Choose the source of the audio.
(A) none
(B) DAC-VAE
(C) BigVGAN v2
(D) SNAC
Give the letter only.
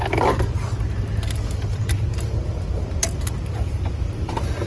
A